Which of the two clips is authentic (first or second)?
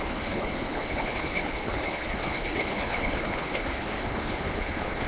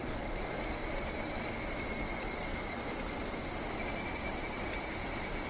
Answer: second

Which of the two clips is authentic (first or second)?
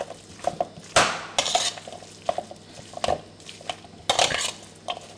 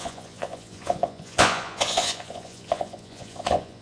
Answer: first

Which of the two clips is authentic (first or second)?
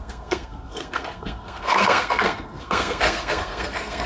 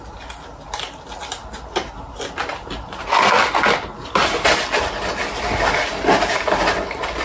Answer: second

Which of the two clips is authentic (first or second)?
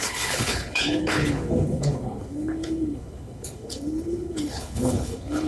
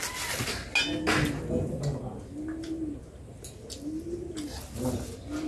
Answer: second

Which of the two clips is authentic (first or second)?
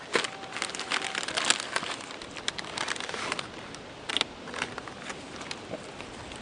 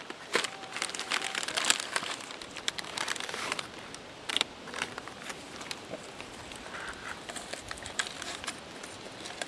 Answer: first